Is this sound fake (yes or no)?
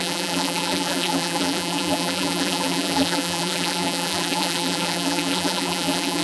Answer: yes